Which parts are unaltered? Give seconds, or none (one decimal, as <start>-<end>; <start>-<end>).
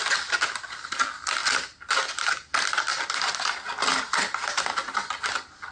0.0-5.7